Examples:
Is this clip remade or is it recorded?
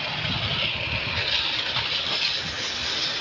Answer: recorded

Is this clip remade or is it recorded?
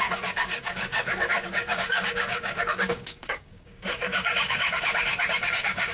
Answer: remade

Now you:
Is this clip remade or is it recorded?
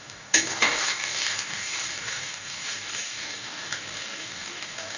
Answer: remade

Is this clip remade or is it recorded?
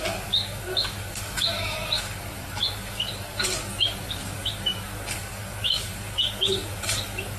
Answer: remade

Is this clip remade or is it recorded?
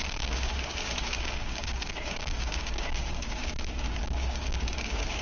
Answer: remade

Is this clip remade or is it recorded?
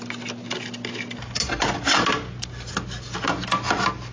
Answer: recorded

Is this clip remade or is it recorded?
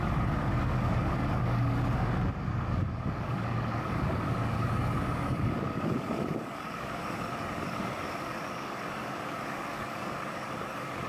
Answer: remade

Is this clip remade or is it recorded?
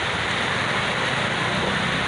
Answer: recorded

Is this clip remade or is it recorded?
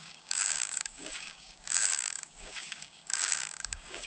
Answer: remade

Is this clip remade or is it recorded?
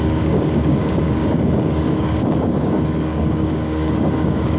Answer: remade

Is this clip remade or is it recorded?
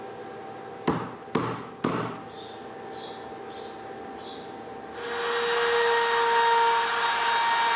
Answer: recorded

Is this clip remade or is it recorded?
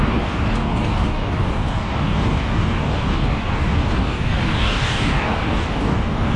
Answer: remade